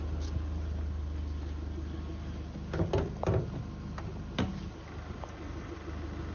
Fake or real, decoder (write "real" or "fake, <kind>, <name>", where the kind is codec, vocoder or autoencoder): real